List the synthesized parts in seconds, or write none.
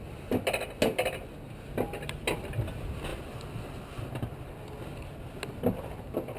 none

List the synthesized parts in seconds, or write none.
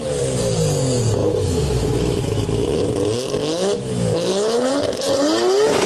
1.2-2.8 (autoencoder, DAC-VAE); 3.4-4.7